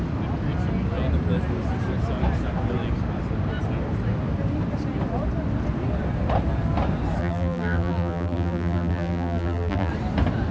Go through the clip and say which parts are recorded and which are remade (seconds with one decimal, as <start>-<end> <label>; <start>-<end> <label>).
0.0-7.2 recorded; 7.2-9.9 remade; 9.9-10.5 recorded